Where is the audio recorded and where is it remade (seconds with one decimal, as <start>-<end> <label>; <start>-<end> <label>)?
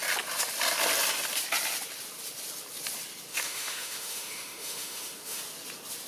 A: 0.0-3.3 recorded; 3.3-5.4 remade; 5.4-6.1 recorded